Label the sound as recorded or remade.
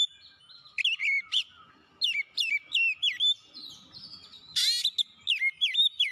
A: recorded